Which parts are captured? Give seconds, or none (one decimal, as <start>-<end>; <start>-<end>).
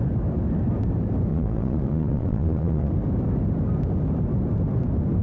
0.0-1.3; 2.9-5.2